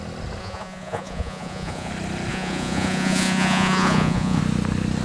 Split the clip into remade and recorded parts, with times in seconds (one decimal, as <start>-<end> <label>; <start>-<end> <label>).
0.0-0.4 recorded; 0.4-1.9 remade; 1.9-2.3 recorded; 2.3-4.4 remade; 4.4-5.0 recorded